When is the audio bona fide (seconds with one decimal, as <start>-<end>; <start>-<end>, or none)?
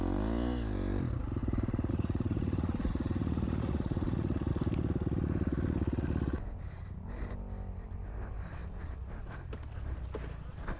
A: 0.0-1.4; 4.5-10.8